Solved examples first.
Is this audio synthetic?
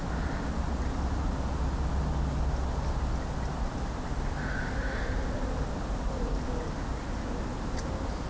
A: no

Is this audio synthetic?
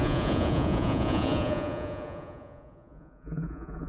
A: yes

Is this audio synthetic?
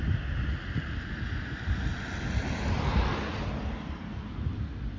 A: no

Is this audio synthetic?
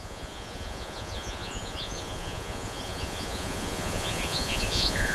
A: yes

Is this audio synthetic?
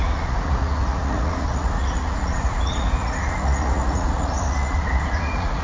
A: yes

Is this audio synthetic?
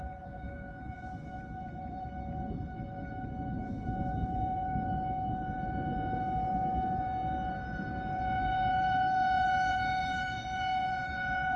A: yes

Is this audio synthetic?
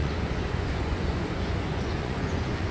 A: yes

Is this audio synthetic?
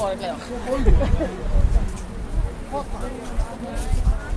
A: no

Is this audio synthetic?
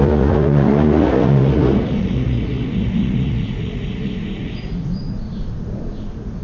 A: yes